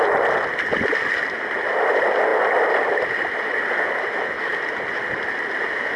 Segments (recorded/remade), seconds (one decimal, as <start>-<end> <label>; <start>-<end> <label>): 0.0-6.0 recorded

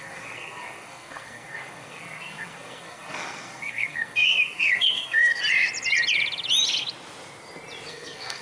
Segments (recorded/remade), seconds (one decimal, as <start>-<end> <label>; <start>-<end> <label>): 0.0-5.4 remade; 5.4-7.9 recorded; 7.9-8.4 remade

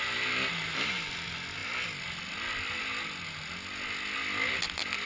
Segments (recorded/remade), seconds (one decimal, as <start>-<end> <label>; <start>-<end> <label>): 0.0-5.1 recorded

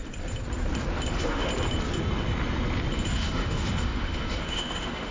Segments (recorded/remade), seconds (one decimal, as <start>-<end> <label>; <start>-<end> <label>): 0.0-1.1 recorded; 1.1-1.5 remade; 1.5-3.1 recorded; 3.1-5.1 remade

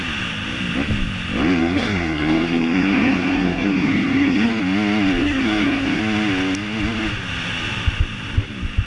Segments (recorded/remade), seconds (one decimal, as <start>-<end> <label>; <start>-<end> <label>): 0.0-1.6 recorded; 1.6-4.5 remade; 4.5-5.2 recorded; 5.2-6.0 remade; 6.0-8.9 recorded

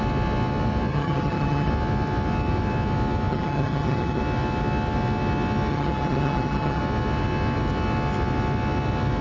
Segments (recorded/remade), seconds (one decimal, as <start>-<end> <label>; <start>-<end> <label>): 0.0-0.9 recorded; 0.9-1.7 remade; 1.7-3.3 recorded; 3.3-4.2 remade; 4.2-5.7 recorded; 5.7-6.8 remade; 6.8-9.2 recorded

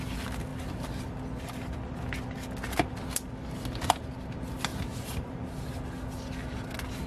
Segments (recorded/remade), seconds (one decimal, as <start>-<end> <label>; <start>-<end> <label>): 0.0-4.7 recorded; 4.7-5.3 remade; 5.3-7.1 recorded